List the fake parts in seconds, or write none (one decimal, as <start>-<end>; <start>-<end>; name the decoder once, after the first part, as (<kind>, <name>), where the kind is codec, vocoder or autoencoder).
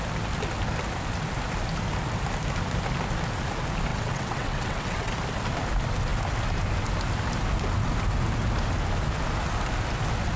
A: 3.9-5.1 (vocoder, WaveNeXt)